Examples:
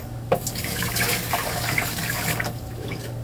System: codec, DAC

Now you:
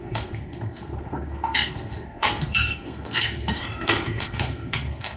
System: codec, SNAC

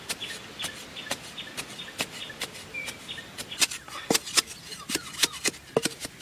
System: none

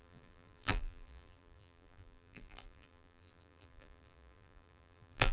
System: vocoder, BigVGAN v2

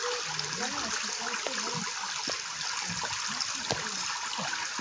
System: none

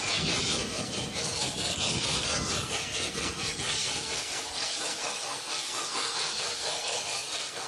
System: codec, SNAC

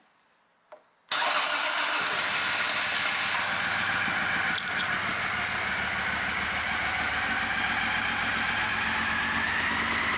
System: none